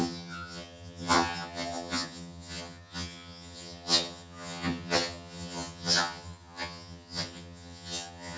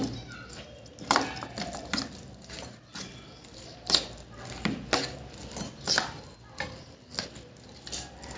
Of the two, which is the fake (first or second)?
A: first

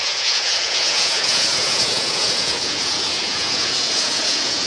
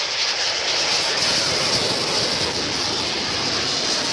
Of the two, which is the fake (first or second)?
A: first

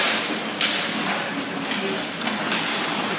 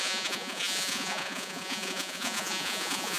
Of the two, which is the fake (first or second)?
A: second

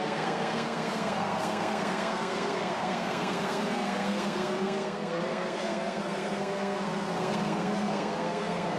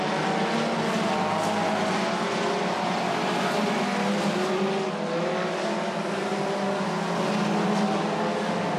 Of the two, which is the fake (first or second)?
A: first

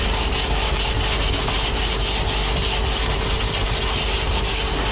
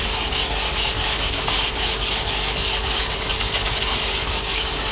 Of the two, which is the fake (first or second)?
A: second